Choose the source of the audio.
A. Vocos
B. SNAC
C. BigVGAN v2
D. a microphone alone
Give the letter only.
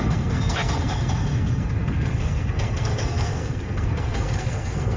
B